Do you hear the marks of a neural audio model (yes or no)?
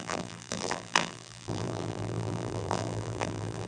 yes